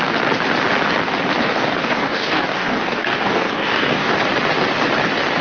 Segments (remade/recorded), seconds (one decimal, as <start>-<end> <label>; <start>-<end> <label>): 0.0-1.4 recorded; 1.4-4.1 remade; 4.1-5.4 recorded